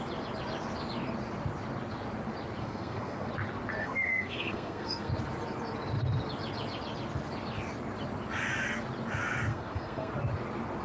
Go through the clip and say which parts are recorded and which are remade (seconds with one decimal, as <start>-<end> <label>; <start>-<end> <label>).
0.0-2.6 recorded; 2.6-3.3 remade; 3.3-3.8 recorded; 3.8-5.1 remade; 5.1-9.5 recorded; 9.5-10.1 remade; 10.1-10.8 recorded